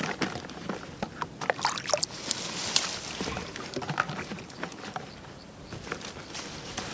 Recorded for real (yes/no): yes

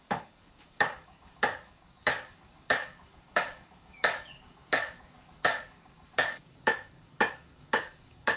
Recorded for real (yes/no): no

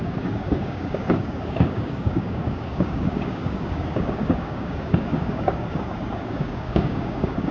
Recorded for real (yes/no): no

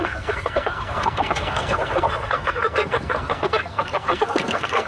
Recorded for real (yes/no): no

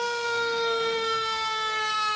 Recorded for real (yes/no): no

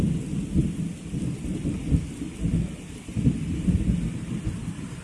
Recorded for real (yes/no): yes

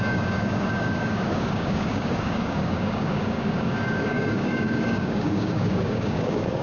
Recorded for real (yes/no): no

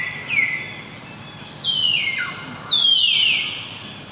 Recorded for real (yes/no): yes